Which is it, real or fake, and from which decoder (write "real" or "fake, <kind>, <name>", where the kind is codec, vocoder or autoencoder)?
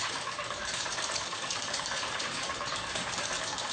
fake, codec, DAC